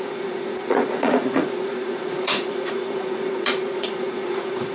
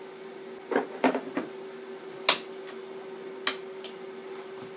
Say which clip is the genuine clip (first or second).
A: second